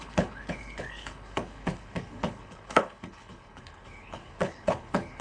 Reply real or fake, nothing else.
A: fake